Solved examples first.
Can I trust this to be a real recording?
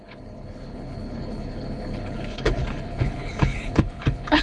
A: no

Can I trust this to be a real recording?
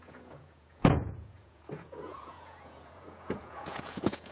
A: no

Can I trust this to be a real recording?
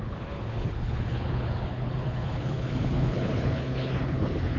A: no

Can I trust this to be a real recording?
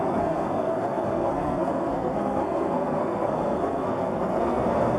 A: no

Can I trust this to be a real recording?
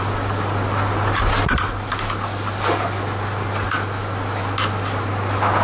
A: yes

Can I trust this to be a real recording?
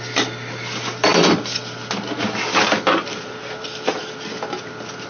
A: yes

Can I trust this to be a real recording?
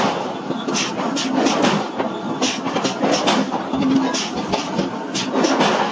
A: yes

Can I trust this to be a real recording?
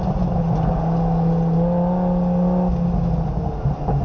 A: yes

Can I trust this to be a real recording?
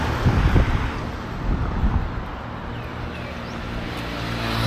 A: yes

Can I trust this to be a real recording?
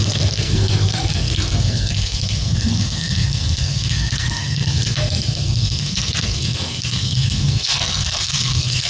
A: no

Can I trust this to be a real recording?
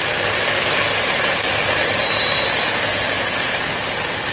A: yes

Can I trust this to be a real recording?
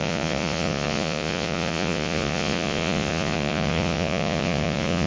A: no